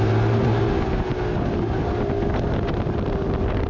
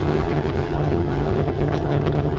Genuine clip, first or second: first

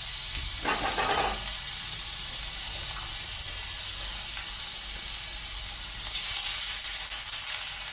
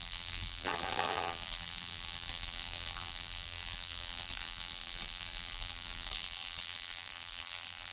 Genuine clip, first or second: first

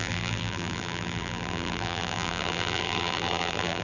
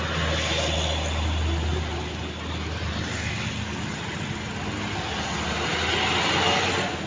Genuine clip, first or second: second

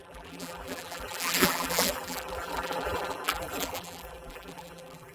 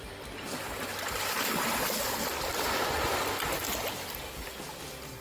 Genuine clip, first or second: second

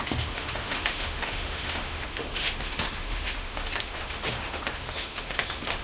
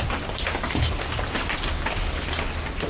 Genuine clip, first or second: second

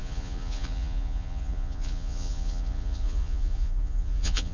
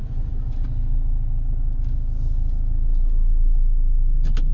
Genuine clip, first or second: second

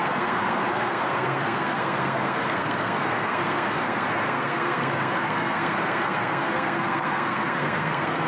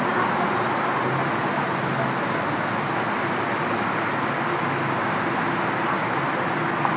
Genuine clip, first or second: second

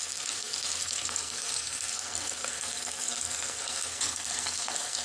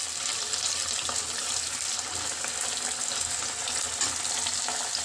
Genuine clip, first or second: second